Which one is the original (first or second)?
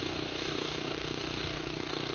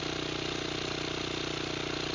second